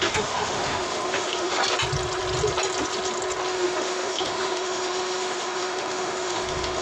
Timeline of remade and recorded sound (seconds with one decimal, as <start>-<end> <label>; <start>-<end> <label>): 0.0-1.6 remade; 1.6-3.5 recorded; 3.5-6.8 remade

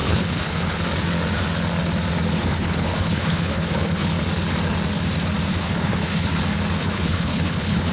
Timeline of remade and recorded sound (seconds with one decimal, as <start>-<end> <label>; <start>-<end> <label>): 0.0-0.8 remade; 0.8-2.3 recorded; 2.3-4.1 remade; 4.1-5.5 recorded; 5.5-6.3 remade; 6.3-6.8 recorded; 6.8-7.9 remade

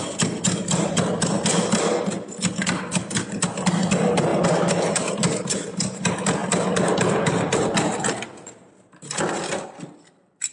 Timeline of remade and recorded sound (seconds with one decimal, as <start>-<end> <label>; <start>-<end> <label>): 0.0-4.3 recorded; 4.3-6.0 remade; 6.0-10.5 recorded

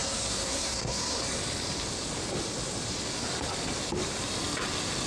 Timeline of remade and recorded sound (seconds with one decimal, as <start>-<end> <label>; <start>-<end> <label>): 0.0-1.2 remade; 1.2-5.1 recorded

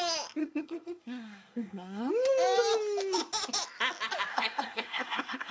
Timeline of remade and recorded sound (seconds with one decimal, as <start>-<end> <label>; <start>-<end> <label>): 0.0-0.4 recorded; 0.4-2.1 remade; 2.1-4.3 recorded; 4.3-5.5 remade

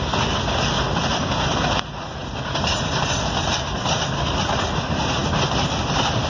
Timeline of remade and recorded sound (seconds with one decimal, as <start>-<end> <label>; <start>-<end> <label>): 0.0-6.3 recorded